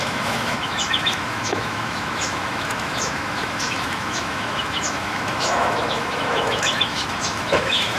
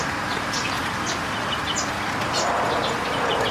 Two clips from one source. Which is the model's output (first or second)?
first